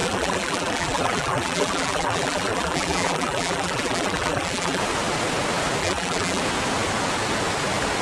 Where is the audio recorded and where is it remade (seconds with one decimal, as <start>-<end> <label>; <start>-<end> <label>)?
0.0-4.8 remade; 4.8-5.8 recorded; 5.8-6.4 remade; 6.4-8.0 recorded